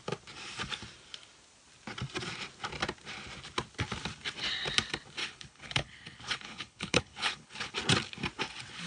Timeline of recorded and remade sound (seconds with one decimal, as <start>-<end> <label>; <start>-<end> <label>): 0.0-5.2 recorded; 5.2-7.7 remade; 7.7-8.9 recorded